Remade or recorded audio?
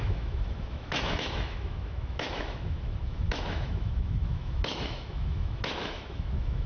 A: remade